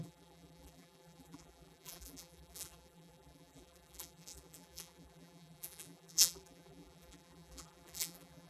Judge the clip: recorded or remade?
remade